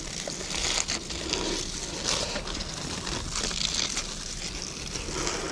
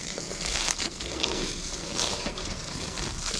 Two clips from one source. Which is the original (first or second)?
first